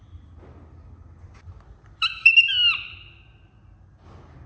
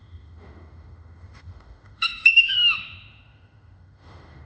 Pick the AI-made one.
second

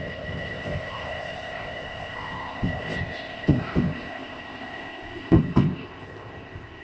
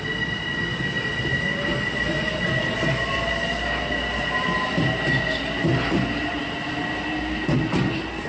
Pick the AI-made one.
first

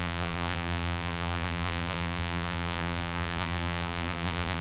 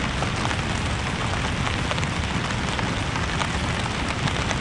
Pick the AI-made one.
first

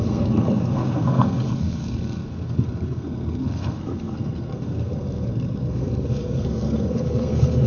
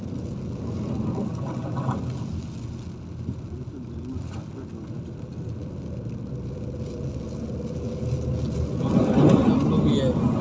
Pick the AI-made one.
first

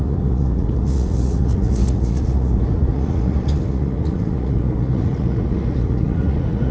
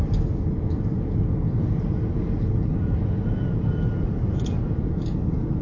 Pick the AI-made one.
first